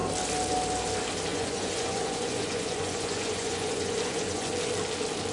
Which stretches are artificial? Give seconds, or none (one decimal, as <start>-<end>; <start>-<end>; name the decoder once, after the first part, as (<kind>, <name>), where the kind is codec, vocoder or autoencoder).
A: 1.3-4.5 (vocoder, Vocos)